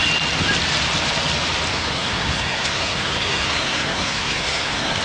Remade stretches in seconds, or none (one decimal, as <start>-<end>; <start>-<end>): 1.7-5.0

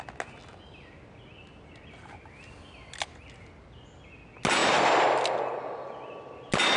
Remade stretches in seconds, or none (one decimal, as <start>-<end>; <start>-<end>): none

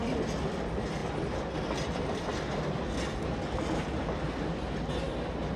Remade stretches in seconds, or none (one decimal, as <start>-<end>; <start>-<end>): none

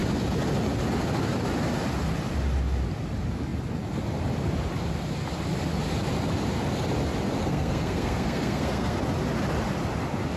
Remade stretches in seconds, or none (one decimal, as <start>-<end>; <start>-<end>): 7.4-9.0

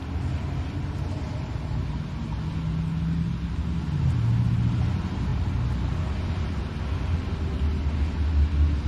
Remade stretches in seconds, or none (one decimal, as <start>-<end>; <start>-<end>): none

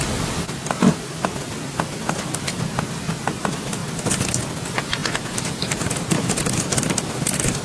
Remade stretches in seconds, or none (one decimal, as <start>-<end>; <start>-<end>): none

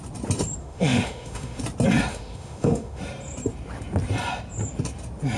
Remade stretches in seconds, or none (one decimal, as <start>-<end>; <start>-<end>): 0.6-1.6; 2.1-3.0